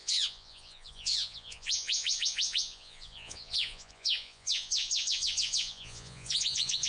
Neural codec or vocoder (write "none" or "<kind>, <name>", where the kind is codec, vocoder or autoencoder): vocoder, Vocos